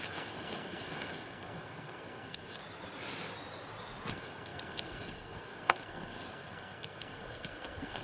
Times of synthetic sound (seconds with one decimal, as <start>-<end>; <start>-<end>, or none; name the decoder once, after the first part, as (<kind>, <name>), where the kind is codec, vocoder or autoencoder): 0.0-2.6 (codec, SNAC); 4.1-8.0